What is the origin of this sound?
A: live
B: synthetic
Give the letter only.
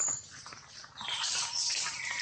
A